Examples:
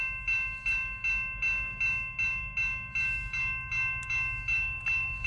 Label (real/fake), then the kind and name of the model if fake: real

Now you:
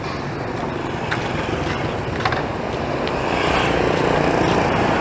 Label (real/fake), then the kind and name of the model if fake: real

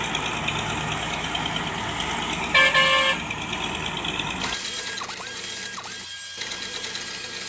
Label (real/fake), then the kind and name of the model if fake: real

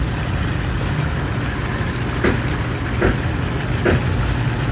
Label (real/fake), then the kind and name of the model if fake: real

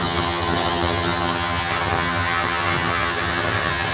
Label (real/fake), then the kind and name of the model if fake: fake, vocoder, HiFi-GAN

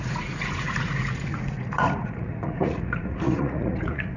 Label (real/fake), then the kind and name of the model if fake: fake, vocoder, Vocos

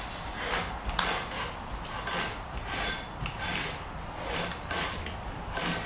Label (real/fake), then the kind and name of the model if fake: real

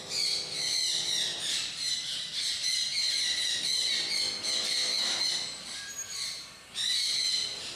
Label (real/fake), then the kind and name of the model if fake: fake, vocoder, BigVGAN v2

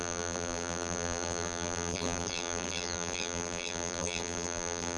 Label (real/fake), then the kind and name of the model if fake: fake, vocoder, BigVGAN v2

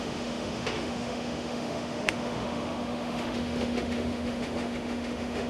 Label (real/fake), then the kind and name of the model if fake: fake, autoencoder, DAC-VAE